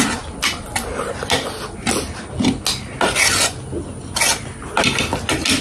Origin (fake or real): real